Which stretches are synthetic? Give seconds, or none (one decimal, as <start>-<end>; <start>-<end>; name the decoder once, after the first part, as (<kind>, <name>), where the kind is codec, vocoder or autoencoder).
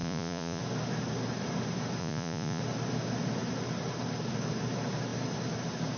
0.0-0.6 (vocoder, Vocos); 2.0-2.6